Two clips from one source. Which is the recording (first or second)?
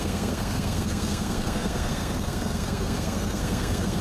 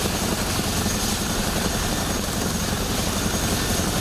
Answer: second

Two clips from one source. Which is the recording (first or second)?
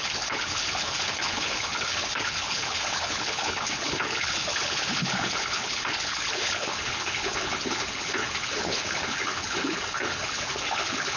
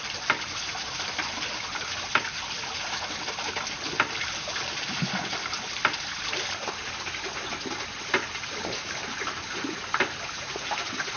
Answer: second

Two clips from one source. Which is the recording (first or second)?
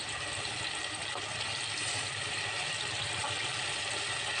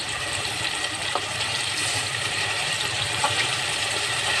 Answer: first